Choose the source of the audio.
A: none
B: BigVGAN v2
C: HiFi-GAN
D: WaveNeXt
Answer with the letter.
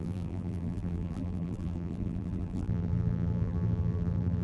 B